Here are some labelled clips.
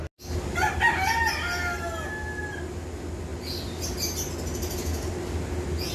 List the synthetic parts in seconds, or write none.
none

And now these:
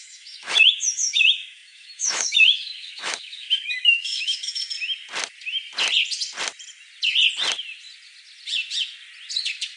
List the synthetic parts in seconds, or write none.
0.0-4.6

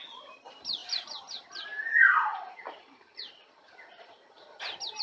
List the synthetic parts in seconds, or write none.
none

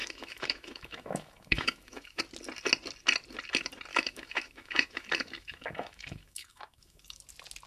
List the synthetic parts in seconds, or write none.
0.0-2.2; 3.9-7.2

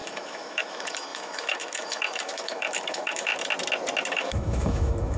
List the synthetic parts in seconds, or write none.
0.0-3.3; 4.1-5.2

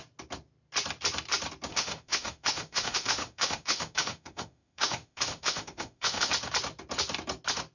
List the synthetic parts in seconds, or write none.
1.7-6.3